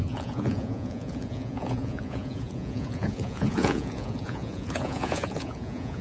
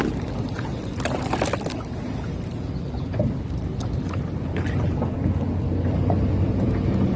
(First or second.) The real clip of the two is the second